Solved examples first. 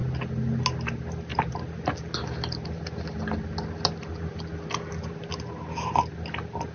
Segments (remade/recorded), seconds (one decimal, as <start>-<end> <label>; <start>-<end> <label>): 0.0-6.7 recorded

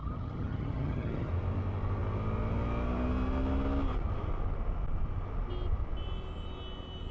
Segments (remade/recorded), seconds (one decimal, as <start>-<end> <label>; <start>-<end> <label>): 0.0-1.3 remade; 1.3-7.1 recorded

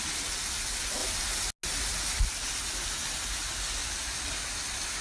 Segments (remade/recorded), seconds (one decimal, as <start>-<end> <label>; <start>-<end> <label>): 0.0-3.8 recorded; 3.8-4.6 remade; 4.6-5.0 recorded